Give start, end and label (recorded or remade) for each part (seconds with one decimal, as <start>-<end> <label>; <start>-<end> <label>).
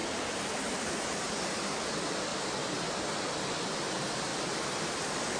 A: 0.0-5.4 recorded